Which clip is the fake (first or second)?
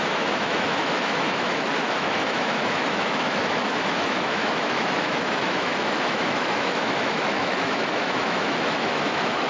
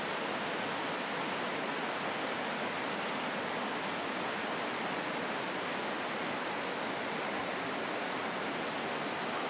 first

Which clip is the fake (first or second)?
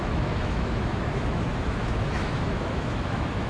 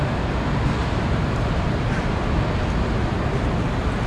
first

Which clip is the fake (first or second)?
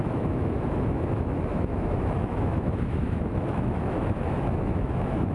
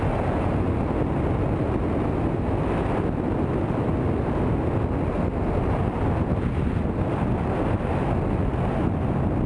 first